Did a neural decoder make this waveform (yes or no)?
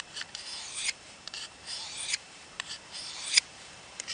yes